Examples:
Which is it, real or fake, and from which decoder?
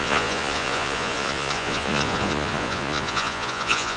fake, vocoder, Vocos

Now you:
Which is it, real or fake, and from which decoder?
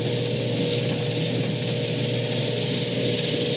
real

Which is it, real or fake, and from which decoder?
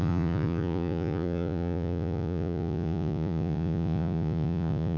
fake, vocoder, Vocos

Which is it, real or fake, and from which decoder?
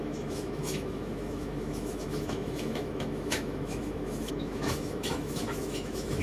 fake, autoencoder, DAC-VAE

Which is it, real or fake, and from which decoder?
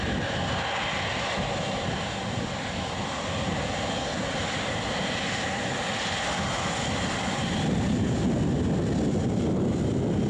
real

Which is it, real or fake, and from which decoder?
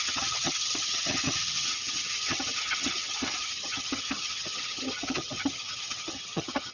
fake, vocoder, HiFi-GAN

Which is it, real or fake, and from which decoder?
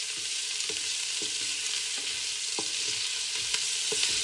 real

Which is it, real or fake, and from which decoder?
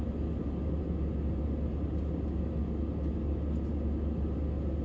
real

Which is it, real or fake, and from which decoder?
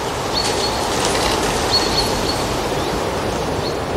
real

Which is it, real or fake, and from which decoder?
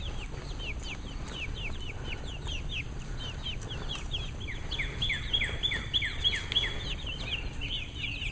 real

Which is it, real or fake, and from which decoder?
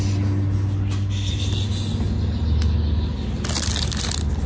real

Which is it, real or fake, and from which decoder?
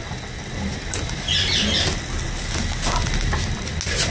real